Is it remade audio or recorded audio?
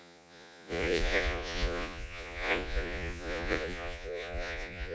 remade